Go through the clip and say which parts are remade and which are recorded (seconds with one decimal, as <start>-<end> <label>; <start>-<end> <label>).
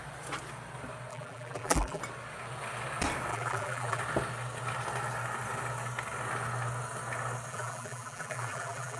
0.0-1.1 recorded; 1.1-2.0 remade; 2.0-3.3 recorded; 3.3-4.0 remade; 4.0-7.5 recorded; 7.5-9.0 remade